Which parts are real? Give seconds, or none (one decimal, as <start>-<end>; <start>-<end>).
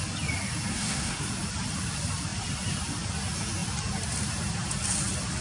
0.0-0.7; 1.3-5.4